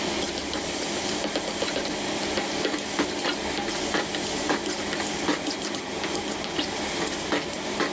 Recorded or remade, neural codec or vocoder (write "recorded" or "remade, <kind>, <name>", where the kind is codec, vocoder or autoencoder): recorded